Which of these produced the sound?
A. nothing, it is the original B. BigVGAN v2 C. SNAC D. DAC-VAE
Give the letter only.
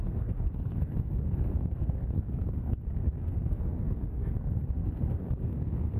C